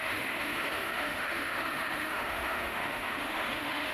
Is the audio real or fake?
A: fake